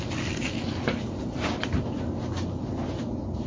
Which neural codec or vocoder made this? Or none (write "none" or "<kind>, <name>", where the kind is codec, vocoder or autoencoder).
none